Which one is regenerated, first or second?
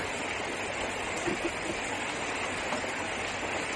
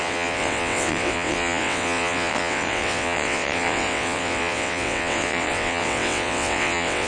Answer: second